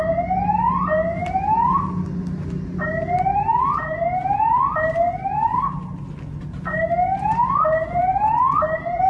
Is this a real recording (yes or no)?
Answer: yes